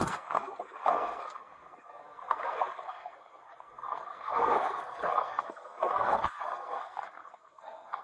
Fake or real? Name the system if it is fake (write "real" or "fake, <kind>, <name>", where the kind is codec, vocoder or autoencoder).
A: fake, codec, SNAC